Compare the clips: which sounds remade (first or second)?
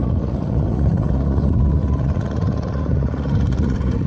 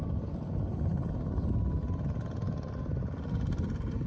first